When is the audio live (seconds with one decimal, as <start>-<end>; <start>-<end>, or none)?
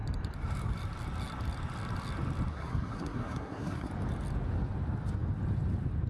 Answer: 0.0-2.5; 3.9-6.1